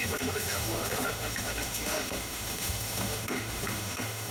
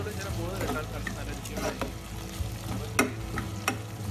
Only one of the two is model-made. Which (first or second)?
first